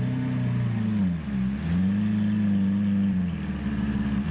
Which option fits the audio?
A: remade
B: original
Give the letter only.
B